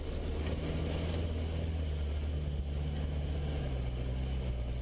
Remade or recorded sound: recorded